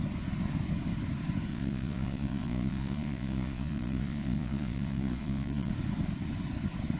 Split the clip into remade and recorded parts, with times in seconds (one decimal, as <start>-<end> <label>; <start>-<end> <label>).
0.0-1.5 recorded; 1.5-5.7 remade; 5.7-7.0 recorded